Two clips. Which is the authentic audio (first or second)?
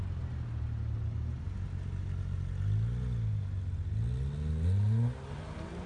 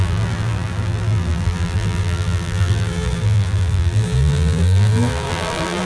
first